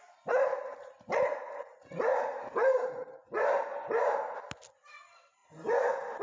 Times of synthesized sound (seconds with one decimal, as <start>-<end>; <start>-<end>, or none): 0.5-2.9; 5.4-6.2